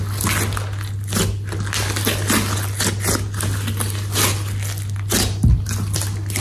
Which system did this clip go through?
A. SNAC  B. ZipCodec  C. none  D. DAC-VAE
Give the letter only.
C